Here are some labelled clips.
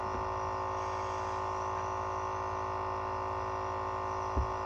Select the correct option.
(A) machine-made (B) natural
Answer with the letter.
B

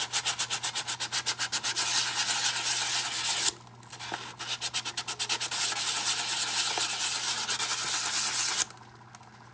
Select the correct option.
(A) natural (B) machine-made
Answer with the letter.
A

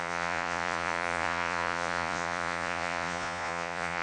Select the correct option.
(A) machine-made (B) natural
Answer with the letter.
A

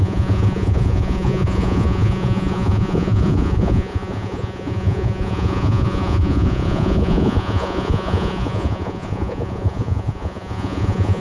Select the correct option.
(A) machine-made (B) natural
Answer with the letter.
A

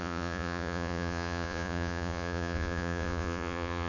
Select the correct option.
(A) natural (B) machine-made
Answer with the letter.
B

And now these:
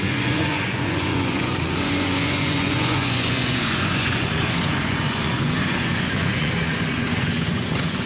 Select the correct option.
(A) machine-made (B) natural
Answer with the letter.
A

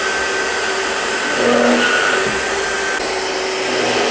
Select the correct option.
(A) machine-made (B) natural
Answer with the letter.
B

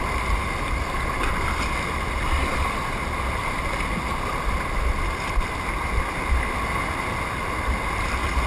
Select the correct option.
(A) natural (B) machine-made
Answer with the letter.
A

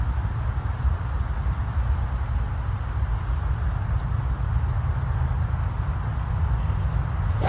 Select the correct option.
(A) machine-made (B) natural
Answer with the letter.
B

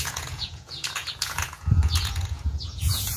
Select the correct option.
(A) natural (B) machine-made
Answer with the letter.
B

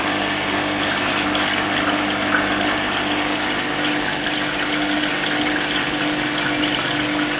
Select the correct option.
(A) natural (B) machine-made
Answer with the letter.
A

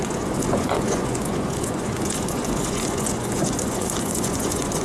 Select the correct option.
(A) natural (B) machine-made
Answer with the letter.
B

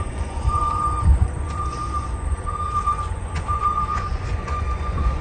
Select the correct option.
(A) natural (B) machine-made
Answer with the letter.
B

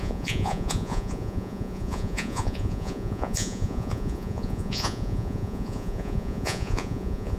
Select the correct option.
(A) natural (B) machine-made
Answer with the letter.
B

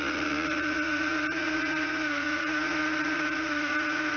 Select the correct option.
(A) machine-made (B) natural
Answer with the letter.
A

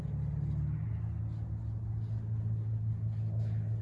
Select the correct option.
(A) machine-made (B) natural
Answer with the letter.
B